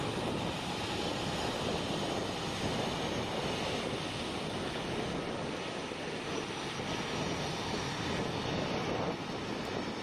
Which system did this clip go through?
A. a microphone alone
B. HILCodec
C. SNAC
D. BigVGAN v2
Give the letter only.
A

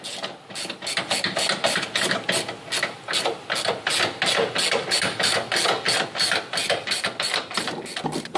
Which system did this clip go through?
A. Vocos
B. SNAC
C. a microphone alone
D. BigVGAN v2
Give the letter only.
C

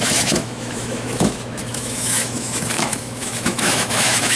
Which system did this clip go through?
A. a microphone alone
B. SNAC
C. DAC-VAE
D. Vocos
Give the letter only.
C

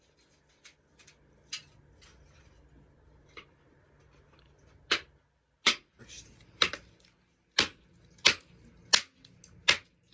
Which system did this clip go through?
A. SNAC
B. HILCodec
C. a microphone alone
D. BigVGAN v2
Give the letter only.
C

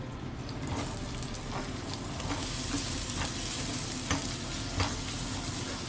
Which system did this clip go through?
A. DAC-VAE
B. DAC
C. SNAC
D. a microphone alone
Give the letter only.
D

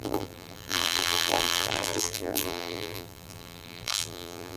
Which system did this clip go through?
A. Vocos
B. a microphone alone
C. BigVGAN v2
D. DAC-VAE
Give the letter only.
C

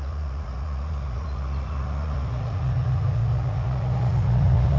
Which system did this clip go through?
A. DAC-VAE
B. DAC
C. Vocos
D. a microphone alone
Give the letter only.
C